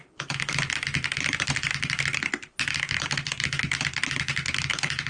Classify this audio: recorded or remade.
recorded